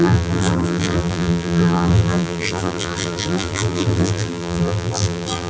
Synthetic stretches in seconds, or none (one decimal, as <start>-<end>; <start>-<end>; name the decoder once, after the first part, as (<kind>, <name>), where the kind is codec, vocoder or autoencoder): 0.0-5.5 (vocoder, BigVGAN v2)